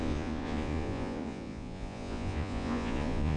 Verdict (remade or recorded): remade